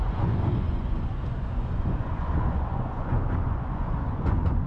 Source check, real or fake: fake